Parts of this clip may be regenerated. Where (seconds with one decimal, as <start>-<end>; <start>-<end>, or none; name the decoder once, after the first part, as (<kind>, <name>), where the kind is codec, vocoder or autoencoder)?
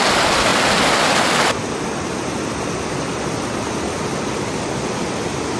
none